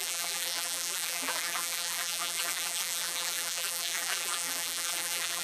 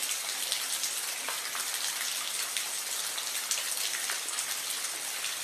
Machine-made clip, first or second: first